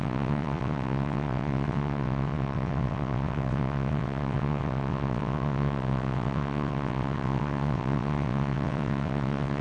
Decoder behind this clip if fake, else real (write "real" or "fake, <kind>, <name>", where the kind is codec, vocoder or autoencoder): fake, vocoder, WaveNeXt